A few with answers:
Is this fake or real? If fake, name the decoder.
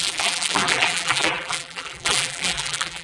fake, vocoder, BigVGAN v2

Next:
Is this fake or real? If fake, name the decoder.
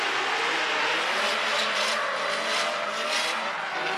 real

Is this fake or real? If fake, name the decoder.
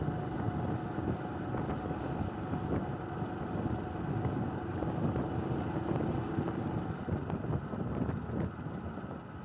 real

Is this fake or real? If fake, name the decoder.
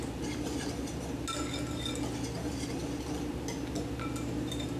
real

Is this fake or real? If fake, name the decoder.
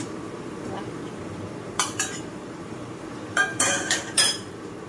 fake, vocoder, BigVGAN v2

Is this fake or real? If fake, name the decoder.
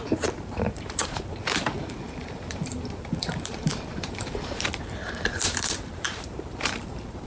fake, vocoder, BigVGAN v2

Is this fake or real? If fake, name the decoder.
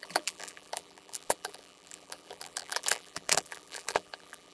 fake, vocoder, BigVGAN v2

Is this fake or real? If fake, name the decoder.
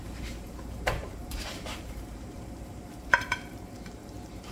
fake, vocoder, BigVGAN v2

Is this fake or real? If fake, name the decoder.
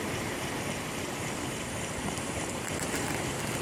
fake, vocoder, BigVGAN v2